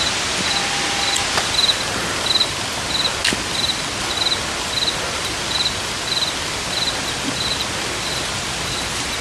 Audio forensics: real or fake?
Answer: real